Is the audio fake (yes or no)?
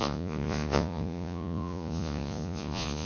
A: yes